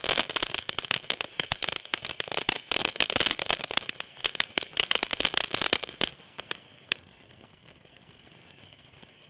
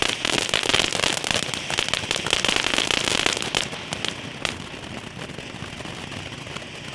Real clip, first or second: second